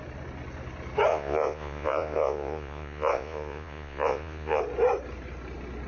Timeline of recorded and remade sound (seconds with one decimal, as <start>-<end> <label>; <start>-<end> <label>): 0.0-1.1 recorded; 1.1-4.6 remade; 4.6-5.9 recorded